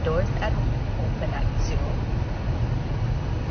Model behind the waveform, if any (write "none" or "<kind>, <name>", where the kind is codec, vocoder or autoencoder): none